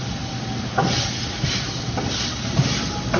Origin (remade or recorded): recorded